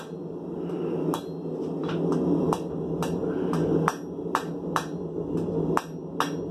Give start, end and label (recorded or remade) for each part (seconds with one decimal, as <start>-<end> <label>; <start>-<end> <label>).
0.0-6.5 recorded